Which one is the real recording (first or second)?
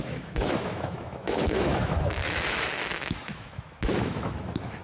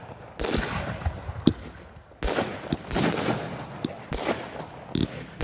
second